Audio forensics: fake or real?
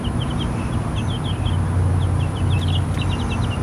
real